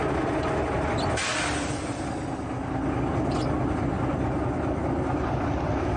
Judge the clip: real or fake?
real